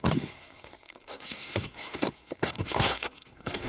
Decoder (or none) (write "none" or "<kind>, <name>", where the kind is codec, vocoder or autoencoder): codec, SNAC